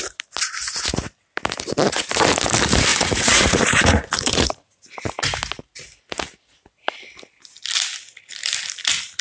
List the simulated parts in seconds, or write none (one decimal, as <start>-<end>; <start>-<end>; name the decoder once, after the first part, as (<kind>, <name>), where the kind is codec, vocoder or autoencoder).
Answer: 2.9-4.9 (vocoder, Vocos)

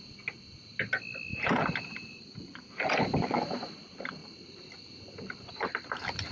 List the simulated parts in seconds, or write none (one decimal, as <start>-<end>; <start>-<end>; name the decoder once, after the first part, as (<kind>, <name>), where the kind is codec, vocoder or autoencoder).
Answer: 1.3-3.7 (vocoder, BigVGAN v2); 4.2-6.3

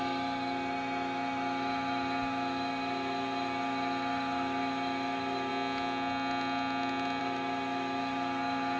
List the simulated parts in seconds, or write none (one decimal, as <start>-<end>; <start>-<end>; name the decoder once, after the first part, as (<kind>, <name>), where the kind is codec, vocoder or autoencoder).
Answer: 0.0-5.5 (autoencoder, DAC-VAE); 7.2-8.8

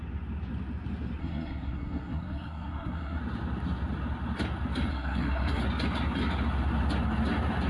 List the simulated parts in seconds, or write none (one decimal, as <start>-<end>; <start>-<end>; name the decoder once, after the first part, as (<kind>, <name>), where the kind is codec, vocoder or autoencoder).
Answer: 1.2-3.2 (codec, SNAC); 4.9-5.6

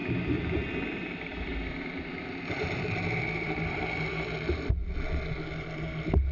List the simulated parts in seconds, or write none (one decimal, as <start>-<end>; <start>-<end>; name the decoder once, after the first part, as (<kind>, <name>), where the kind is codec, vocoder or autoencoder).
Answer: 0.8-1.3 (vocoder, BigVGAN v2); 1.9-4.8